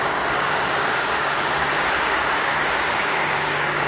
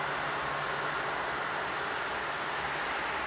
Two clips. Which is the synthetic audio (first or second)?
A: first